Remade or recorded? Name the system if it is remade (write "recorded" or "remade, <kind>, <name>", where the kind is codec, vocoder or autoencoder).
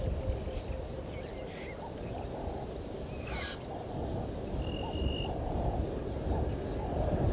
recorded